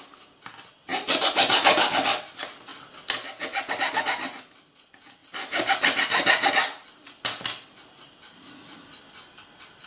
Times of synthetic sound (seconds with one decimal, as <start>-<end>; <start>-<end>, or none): none